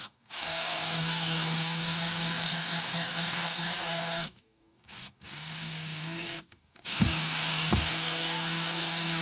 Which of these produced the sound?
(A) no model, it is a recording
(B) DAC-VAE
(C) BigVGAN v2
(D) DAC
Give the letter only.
D